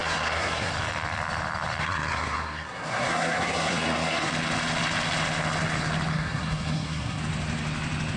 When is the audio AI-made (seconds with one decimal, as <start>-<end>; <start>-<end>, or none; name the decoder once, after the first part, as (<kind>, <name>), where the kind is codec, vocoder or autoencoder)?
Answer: 0.0-0.7 (codec, SNAC); 1.8-4.3; 6.1-7.2